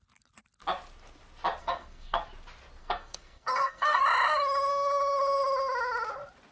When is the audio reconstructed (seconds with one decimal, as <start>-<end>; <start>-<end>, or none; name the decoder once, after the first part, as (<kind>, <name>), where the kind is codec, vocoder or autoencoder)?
1.6-2.2 (codec, SNAC); 2.8-4.0